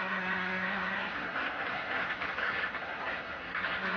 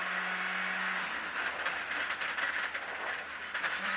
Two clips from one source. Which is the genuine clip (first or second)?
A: second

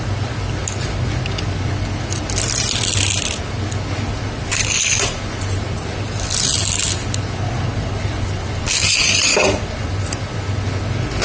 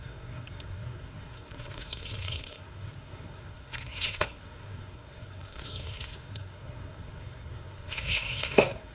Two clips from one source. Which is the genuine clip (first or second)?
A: first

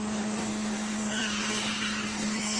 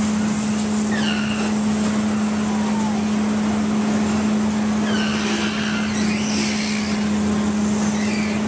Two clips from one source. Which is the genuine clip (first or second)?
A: second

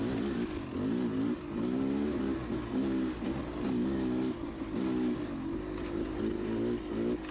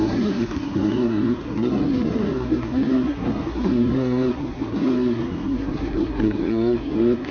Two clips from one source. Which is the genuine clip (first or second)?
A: first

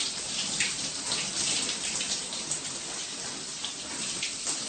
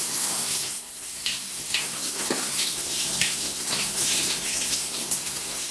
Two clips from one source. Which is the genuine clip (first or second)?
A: first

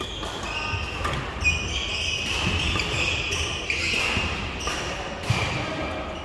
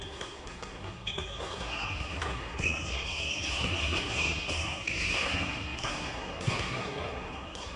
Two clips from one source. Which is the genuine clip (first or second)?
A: first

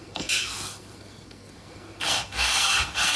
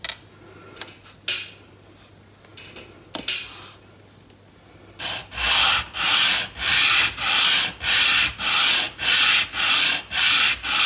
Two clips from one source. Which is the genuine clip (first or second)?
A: second